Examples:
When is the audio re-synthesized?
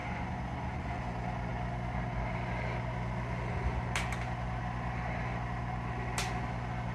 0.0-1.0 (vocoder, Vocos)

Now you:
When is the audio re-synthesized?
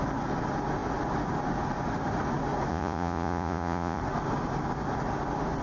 2.7-4.0 (vocoder, Vocos)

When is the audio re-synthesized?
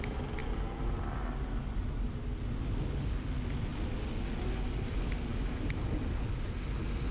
none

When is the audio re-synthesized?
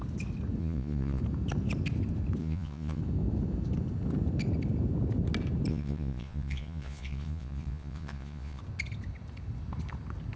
0.6-1.2 (vocoder, Vocos); 2.4-3.0; 5.7-8.6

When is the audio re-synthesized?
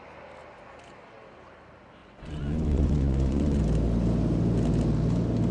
2.0-3.6 (vocoder, Vocos)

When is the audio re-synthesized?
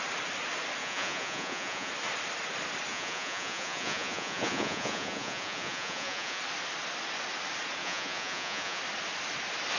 0.8-1.9 (vocoder, Vocos); 2.9-6.4; 7.8-8.8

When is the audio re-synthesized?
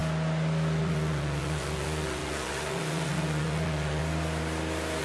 0.8-4.0 (vocoder, Vocos)